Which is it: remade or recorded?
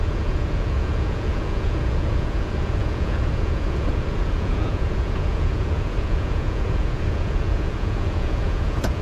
remade